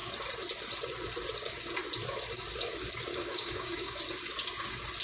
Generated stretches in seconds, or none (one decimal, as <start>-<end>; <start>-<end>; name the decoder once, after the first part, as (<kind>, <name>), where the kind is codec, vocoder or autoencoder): 3.1-4.0 (codec, DAC)